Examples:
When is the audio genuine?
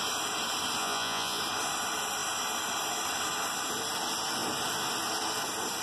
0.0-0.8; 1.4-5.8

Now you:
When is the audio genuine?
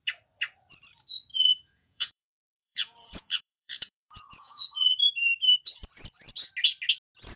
0.0-1.3; 5.0-7.4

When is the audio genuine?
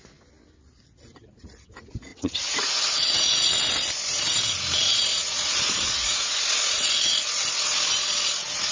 0.0-2.1; 3.5-5.1; 6.4-8.7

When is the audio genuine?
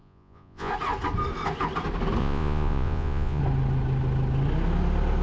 0.7-2.2; 3.4-5.2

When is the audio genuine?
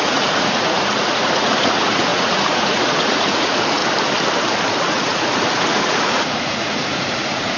3.8-4.9